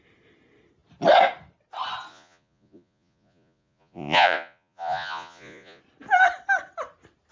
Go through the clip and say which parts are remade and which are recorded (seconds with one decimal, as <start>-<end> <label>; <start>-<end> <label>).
0.0-2.1 recorded; 2.1-5.8 remade; 5.8-7.3 recorded